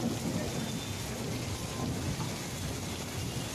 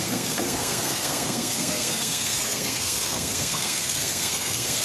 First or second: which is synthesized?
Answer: second